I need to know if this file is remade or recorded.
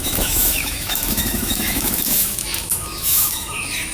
remade